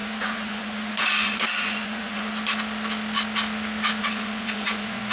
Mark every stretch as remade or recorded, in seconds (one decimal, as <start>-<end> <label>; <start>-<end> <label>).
0.0-2.3 remade; 2.3-4.0 recorded; 4.0-5.1 remade